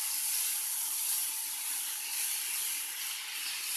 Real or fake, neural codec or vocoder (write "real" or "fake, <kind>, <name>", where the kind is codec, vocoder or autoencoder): real